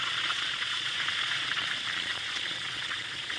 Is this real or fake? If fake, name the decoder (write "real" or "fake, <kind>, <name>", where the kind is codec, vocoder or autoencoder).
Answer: fake, vocoder, Vocos